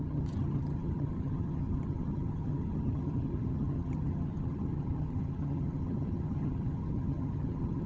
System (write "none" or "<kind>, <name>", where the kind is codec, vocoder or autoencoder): vocoder, HiFi-GAN